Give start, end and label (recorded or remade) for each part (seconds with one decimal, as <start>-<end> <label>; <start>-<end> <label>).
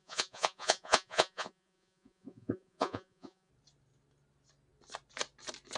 0.0-3.5 remade; 3.5-5.8 recorded